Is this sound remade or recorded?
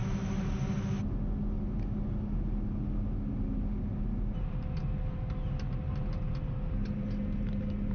recorded